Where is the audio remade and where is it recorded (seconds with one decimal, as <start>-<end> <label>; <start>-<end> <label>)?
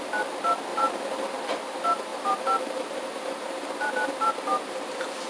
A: 0.0-0.7 recorded; 0.7-1.6 remade; 1.6-2.1 recorded; 2.1-5.3 remade